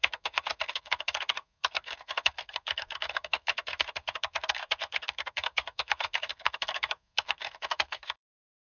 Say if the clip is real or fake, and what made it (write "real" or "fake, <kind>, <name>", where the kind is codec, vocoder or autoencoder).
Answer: fake, codec, SNAC